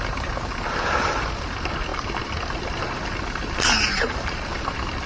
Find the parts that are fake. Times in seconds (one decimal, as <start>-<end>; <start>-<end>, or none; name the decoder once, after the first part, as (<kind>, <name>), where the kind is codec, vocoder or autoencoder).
1.9-3.5 (vocoder, BigVGAN v2)